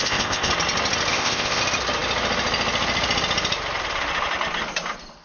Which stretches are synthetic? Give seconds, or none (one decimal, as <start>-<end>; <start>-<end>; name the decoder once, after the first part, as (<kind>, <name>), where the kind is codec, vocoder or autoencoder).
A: 0.0-0.5 (codec, ZipCodec); 1.1-1.6